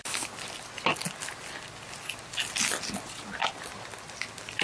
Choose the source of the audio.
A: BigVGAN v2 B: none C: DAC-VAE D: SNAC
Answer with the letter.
B